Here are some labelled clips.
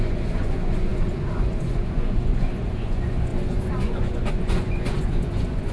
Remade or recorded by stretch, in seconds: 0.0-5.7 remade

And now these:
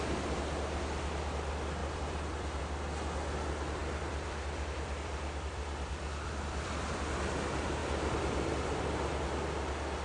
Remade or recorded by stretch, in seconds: 0.0-1.8 recorded; 1.8-2.6 remade; 2.6-3.8 recorded; 3.8-7.2 remade; 7.2-10.0 recorded

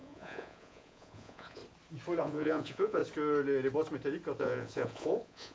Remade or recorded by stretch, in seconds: 0.0-1.6 remade; 1.6-2.2 recorded; 2.2-3.0 remade; 3.0-4.4 recorded; 4.4-5.5 remade

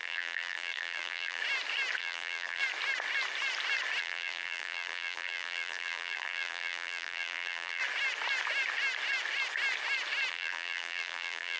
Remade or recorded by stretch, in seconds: 0.0-1.4 remade; 1.4-2.0 recorded; 2.0-2.6 remade; 2.6-4.0 recorded; 4.0-7.8 remade; 7.8-10.3 recorded; 10.3-11.6 remade

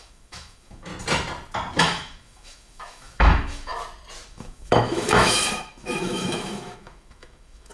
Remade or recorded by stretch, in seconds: 0.0-0.9 remade; 0.9-1.8 recorded; 1.8-3.7 remade; 3.7-4.3 recorded; 4.3-7.7 remade

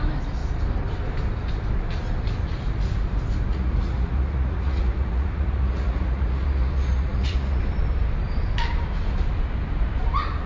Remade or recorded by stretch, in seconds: 0.0-3.5 recorded; 3.5-7.6 remade; 7.6-10.5 recorded